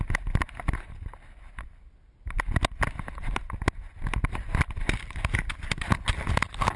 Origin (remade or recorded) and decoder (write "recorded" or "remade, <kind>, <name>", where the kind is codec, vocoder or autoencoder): recorded